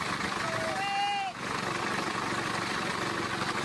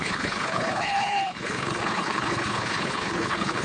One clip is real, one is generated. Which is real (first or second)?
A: first